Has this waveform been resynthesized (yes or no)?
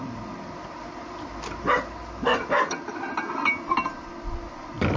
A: no